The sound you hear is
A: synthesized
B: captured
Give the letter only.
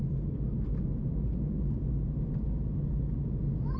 B